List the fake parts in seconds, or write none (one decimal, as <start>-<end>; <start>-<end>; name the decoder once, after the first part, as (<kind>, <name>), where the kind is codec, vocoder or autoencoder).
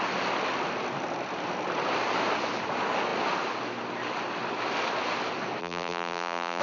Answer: 5.6-6.6 (vocoder, BigVGAN v2)